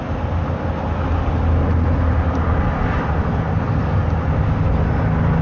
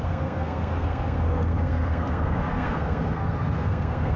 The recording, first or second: first